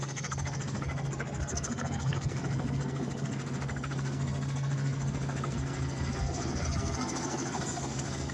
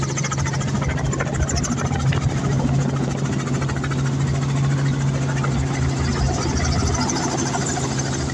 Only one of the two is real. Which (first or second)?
second